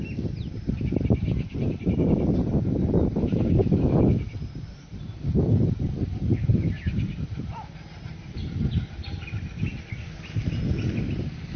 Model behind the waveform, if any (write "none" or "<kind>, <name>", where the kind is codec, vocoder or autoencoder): vocoder, BigVGAN v2